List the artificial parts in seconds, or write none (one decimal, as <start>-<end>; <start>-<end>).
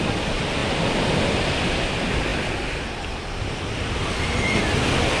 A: none